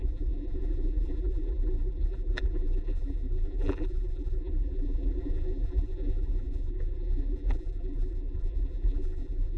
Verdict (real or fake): fake